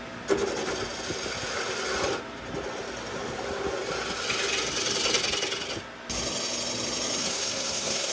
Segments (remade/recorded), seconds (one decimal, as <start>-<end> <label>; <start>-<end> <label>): 0.0-7.2 recorded; 7.2-8.1 remade